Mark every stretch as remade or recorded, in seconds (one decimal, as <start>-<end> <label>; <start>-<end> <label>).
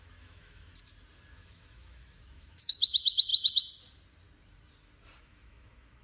0.0-0.7 remade; 0.7-1.3 recorded; 1.3-3.3 remade; 3.3-5.2 recorded; 5.2-6.0 remade